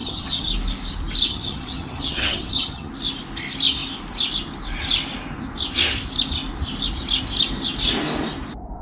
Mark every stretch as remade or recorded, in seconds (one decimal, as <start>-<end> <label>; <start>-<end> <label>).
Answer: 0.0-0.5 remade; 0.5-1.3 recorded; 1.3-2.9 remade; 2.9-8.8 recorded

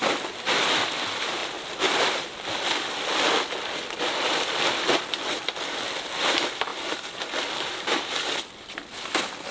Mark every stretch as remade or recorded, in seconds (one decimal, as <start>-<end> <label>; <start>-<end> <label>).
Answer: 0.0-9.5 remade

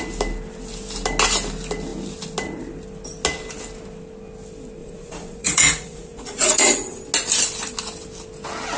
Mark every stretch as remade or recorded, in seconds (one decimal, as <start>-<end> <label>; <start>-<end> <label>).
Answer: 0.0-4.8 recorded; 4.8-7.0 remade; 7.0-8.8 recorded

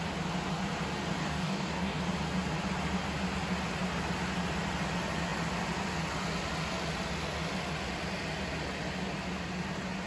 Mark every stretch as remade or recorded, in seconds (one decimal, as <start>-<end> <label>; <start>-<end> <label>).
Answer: 0.0-1.2 recorded; 1.2-2.0 remade; 2.0-10.1 recorded

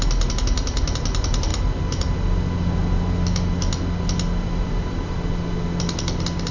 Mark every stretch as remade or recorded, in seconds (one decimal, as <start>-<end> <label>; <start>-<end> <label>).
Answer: 0.0-6.5 recorded

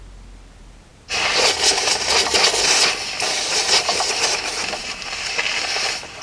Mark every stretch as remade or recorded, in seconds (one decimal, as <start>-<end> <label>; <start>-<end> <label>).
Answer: 0.0-6.2 recorded

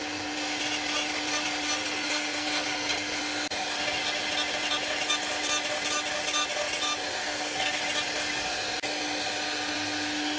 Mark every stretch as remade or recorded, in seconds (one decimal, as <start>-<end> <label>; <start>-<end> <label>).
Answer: 0.0-1.8 recorded; 1.8-3.2 remade; 3.2-7.2 recorded; 7.2-7.8 remade; 7.8-10.4 recorded

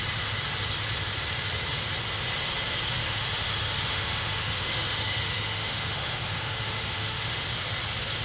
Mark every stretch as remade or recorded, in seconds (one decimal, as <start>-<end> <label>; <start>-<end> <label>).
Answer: 0.0-3.0 recorded; 3.0-7.5 remade; 7.5-8.2 recorded